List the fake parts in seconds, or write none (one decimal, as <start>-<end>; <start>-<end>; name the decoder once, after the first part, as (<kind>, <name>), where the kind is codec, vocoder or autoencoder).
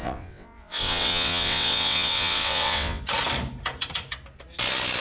0.0-3.0 (vocoder, WaveNeXt)